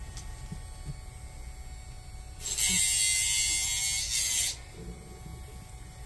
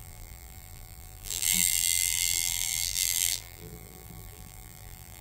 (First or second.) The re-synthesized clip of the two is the second